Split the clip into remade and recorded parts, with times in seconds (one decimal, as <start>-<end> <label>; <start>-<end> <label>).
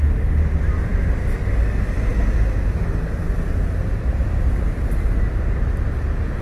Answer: 0.0-6.4 recorded